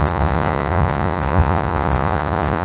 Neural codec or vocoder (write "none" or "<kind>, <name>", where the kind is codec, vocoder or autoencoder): vocoder, Vocos